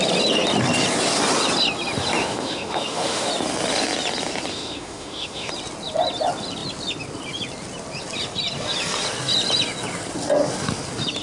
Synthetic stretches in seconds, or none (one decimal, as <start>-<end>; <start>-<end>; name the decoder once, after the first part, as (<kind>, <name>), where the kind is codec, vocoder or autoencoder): 2.2-3.3 (autoencoder, DAC-VAE); 4.5-5.5